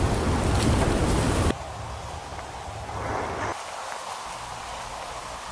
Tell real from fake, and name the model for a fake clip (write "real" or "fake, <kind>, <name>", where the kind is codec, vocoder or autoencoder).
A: real